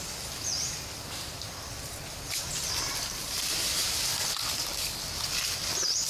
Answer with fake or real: fake